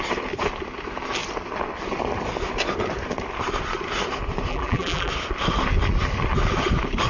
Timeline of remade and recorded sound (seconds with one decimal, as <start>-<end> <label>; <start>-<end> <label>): 0.0-4.5 recorded; 4.5-5.1 remade; 5.1-7.1 recorded